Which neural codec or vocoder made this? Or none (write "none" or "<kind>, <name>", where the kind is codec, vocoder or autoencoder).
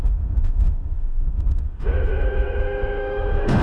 autoencoder, DAC-VAE